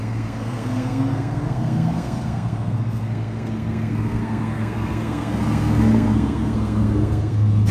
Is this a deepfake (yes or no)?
yes